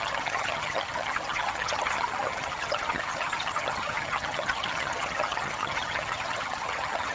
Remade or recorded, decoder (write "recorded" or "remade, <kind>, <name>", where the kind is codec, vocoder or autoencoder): remade, vocoder, HiFi-GAN